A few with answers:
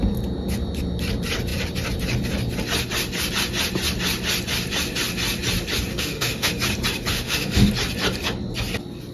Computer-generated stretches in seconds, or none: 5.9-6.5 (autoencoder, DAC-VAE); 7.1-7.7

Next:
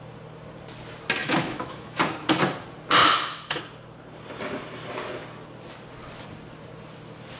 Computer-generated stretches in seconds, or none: 1.2-2.0 (autoencoder, DAC-VAE); 3.0-3.6

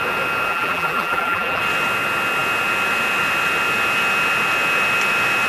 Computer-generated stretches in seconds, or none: 0.5-1.6 (vocoder, BigVGAN v2)

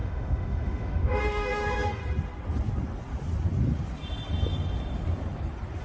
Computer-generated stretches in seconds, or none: 0.0-2.0 (autoencoder, DAC-VAE)